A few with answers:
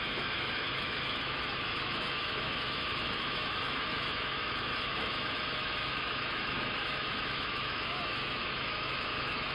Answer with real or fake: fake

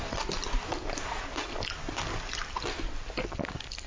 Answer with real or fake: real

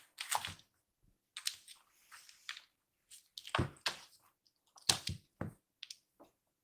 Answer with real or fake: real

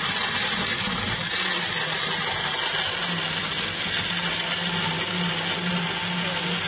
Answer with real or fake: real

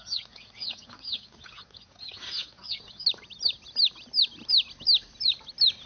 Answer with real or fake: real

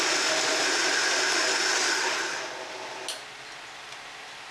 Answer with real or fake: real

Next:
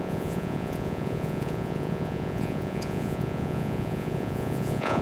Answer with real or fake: fake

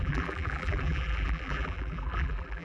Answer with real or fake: fake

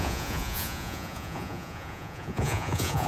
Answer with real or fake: fake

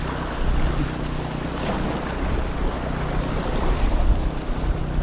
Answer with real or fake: real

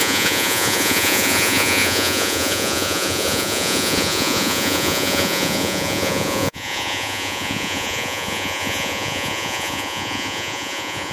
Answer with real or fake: fake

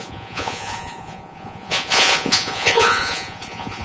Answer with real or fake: fake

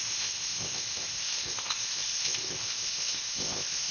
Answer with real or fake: fake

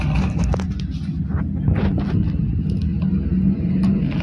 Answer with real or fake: real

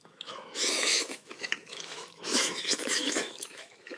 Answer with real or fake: fake